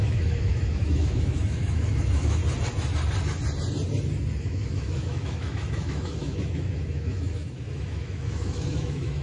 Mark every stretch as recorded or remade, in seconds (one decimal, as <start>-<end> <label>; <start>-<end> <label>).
0.0-2.4 remade; 2.4-4.4 recorded; 4.4-9.2 remade